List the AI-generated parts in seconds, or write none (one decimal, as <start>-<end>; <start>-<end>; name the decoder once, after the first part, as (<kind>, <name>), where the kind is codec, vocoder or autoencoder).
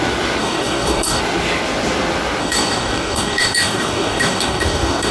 0.4-1.2 (codec, DAC); 2.4-5.1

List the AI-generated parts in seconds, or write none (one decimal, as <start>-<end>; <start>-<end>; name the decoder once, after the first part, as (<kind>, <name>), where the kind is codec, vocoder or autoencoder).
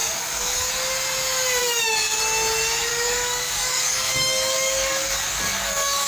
0.0-0.7 (codec, DAC); 1.6-2.2; 2.9-6.1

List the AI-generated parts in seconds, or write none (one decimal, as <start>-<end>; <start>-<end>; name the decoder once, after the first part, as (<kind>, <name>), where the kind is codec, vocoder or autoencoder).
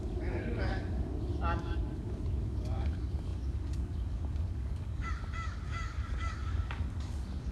0.0-7.5 (codec, DAC)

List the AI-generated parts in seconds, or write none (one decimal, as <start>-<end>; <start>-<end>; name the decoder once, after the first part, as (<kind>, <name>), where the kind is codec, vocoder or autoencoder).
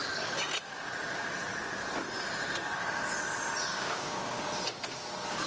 3.7-4.4 (codec, DAC)